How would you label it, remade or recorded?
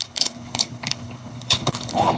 remade